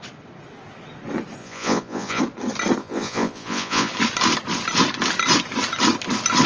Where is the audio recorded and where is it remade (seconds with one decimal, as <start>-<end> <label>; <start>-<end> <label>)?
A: 0.0-1.4 recorded; 1.4-2.2 remade; 2.2-2.8 recorded; 2.8-3.9 remade; 3.9-6.5 recorded